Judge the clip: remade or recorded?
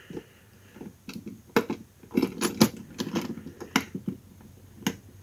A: recorded